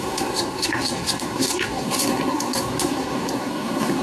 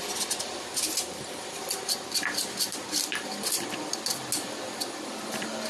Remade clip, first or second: first